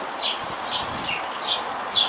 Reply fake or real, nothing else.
real